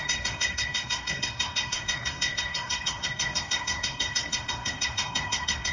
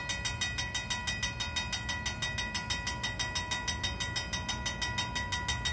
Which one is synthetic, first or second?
first